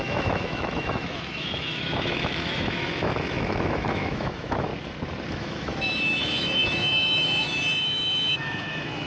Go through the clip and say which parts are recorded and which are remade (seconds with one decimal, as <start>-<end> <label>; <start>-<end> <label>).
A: 0.0-4.7 remade; 4.7-5.3 recorded; 5.3-9.1 remade